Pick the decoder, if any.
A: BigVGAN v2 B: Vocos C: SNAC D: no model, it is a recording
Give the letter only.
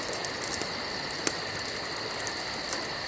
D